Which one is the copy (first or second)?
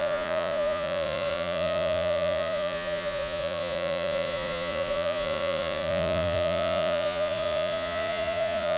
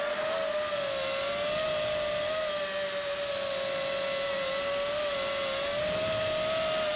first